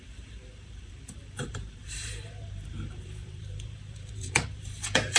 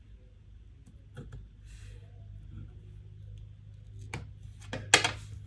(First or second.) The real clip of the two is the second